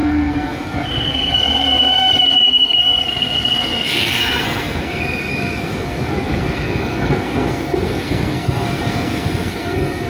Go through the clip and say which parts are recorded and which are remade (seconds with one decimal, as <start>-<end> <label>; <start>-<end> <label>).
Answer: 0.0-10.1 remade